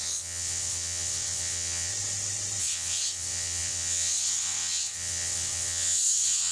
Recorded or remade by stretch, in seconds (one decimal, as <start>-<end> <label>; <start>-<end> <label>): 0.0-1.9 remade; 1.9-2.6 recorded; 2.6-6.5 remade